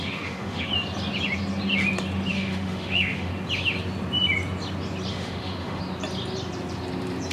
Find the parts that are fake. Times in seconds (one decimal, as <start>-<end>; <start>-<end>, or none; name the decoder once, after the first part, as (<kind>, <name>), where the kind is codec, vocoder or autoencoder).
0.0-0.7 (autoencoder, DAC-VAE); 2.3-3.3; 5.1-5.8